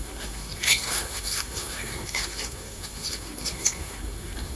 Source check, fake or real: fake